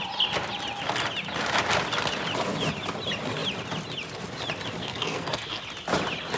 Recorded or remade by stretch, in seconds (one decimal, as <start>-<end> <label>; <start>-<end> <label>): 0.0-4.8 recorded; 4.8-5.6 remade; 5.6-6.4 recorded